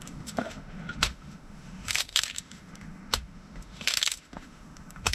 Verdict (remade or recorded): remade